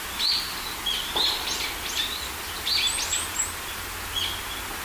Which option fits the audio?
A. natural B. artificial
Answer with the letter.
A